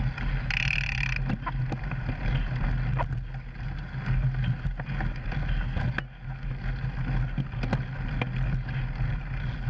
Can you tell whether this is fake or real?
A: real